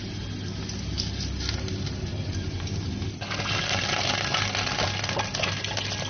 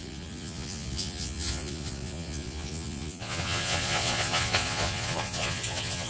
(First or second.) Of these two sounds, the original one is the first